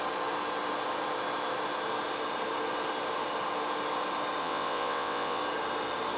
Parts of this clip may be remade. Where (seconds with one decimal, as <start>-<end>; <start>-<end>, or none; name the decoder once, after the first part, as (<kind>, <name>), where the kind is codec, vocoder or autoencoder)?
4.4-5.4 (vocoder, WaveNeXt)